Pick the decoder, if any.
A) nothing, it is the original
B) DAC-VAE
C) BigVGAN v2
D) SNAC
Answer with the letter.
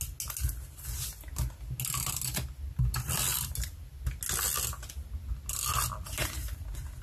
A